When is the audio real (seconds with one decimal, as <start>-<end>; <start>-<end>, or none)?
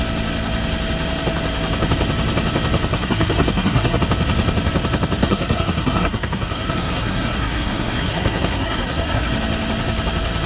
0.0-2.9; 4.0-5.2; 9.3-10.5